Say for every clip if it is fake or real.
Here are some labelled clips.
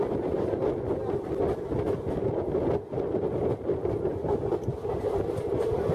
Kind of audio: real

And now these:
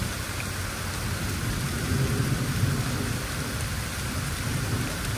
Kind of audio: real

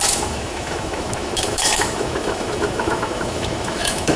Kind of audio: fake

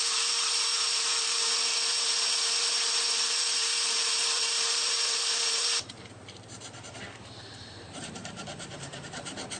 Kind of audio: fake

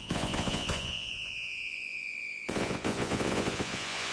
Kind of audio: fake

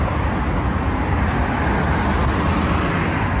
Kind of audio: real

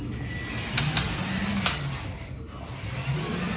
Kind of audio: real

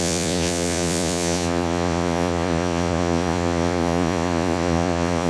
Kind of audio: fake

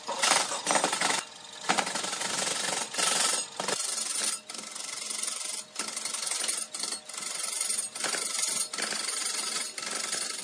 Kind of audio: real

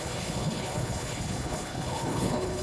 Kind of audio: fake